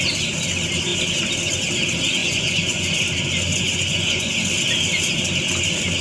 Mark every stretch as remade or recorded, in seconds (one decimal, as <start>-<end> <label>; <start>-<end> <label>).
0.0-2.2 recorded; 2.2-3.0 remade; 3.0-3.5 recorded; 3.5-4.3 remade; 4.3-6.0 recorded